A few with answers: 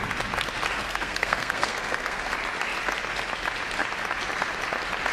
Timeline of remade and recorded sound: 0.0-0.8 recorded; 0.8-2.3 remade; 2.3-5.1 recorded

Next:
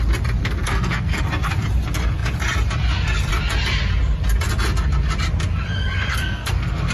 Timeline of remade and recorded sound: 0.0-0.4 recorded; 0.4-1.2 remade; 1.2-6.1 recorded; 6.1-6.9 remade

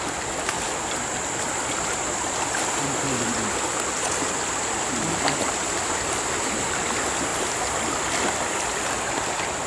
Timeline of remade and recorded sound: 0.0-9.7 recorded

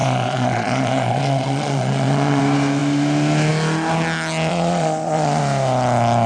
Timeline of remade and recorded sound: 0.0-2.4 remade; 2.4-4.5 recorded; 4.5-5.4 remade; 5.4-6.3 recorded

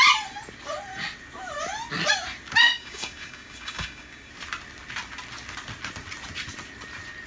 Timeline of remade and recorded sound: 0.0-2.7 recorded; 2.7-4.3 remade; 4.3-7.3 recorded

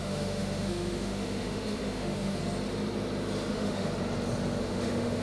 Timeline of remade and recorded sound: 0.0-2.4 remade; 2.4-3.5 recorded; 3.5-3.9 remade; 3.9-4.6 recorded; 4.6-5.2 remade

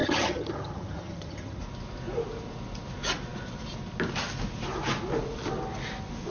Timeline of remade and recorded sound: 0.0-1.6 remade; 1.6-6.3 recorded